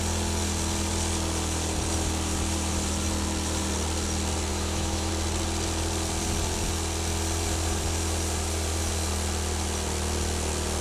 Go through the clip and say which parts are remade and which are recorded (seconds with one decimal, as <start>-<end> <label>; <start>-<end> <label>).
0.0-4.5 recorded; 4.5-5.1 remade; 5.1-10.8 recorded